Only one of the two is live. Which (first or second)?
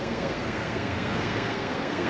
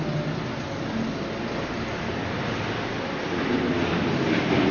second